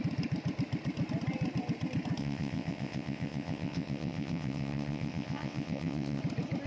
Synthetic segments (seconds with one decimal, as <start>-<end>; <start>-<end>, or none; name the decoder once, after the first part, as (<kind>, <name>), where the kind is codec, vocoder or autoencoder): 2.2-6.2 (vocoder, WaveNeXt)